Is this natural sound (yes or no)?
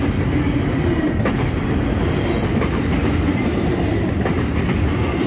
no